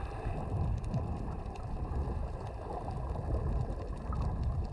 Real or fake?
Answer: fake